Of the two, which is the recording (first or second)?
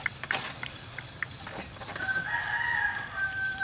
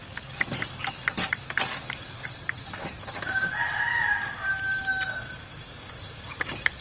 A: second